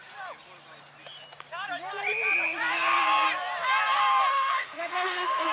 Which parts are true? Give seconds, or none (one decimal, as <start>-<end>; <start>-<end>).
0.0-4.3